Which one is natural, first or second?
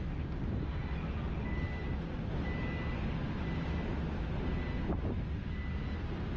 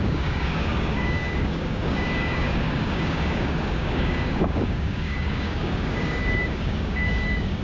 first